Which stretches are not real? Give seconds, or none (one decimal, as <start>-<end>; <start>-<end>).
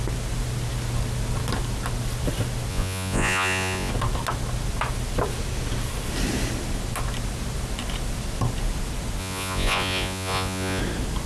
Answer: 2.7-3.9; 9.2-10.8